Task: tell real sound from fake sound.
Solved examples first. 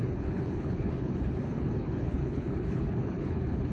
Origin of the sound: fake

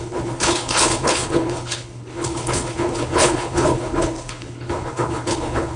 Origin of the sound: fake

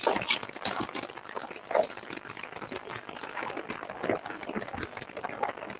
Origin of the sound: real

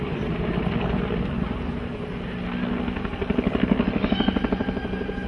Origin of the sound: real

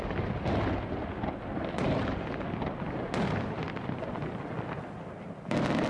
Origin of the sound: real